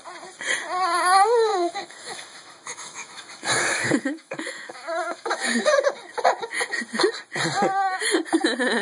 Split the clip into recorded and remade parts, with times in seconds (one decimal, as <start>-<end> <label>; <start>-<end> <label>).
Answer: 0.0-1.5 recorded; 1.5-5.7 remade; 5.7-8.8 recorded